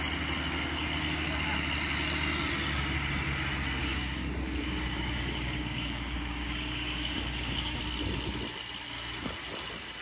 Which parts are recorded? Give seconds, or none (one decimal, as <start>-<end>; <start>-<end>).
0.0-3.8; 7.8-10.0